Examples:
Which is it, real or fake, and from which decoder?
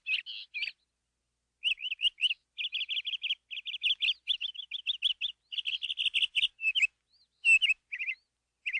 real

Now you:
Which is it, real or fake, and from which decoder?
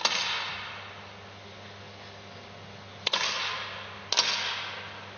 real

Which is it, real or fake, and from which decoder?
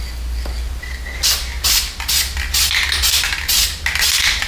real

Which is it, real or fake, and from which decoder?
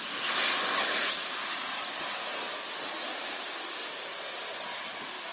real